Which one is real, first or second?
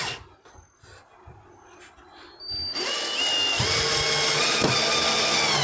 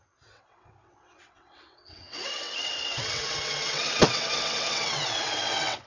first